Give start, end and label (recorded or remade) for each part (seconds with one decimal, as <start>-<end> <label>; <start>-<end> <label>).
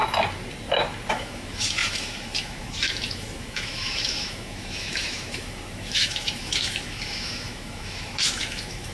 0.0-1.1 recorded; 1.1-8.9 remade